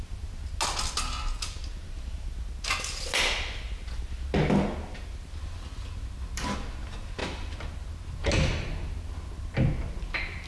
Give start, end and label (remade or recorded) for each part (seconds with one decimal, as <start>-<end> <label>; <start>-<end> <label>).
0.0-10.5 recorded